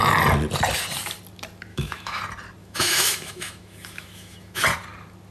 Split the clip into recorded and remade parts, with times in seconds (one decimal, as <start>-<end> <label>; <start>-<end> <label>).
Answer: 0.0-1.7 recorded; 1.7-2.2 remade; 2.2-2.6 recorded; 2.6-4.6 remade; 4.6-5.3 recorded